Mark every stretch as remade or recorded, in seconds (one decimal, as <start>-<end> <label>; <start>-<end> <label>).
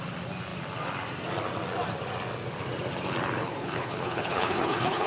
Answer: 0.0-3.4 recorded; 3.4-5.1 remade